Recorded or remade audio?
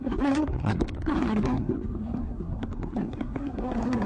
remade